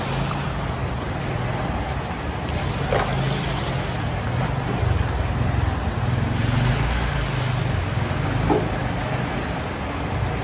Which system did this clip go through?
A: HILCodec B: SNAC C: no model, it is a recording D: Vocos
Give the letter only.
C